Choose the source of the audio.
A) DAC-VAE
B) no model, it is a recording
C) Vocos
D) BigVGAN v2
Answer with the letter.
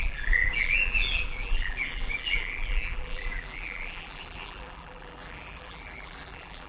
D